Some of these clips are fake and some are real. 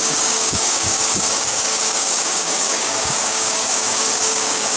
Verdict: fake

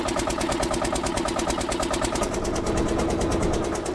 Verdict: real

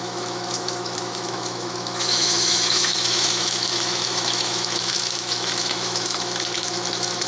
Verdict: fake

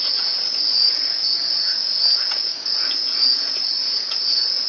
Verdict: fake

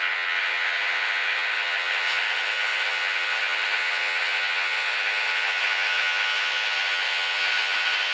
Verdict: fake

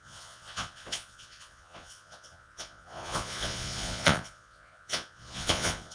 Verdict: fake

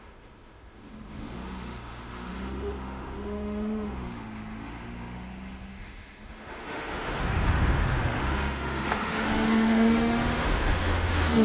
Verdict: fake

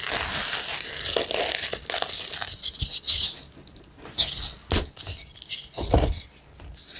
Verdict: real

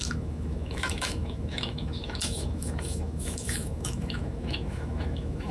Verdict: fake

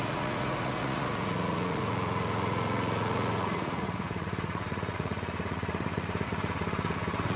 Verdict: fake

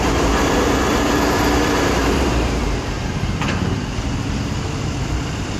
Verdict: fake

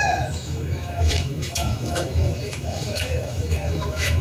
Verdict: fake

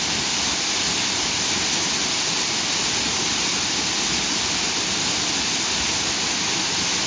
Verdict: real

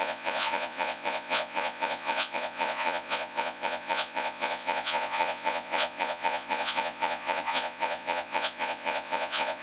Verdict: fake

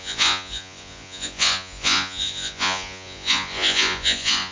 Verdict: fake